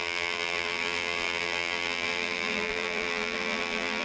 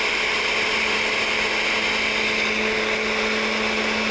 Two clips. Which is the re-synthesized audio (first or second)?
first